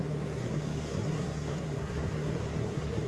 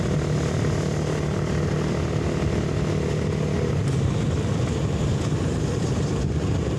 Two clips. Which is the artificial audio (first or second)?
first